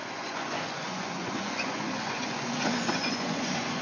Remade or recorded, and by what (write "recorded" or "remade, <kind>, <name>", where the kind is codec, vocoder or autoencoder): remade, vocoder, Vocos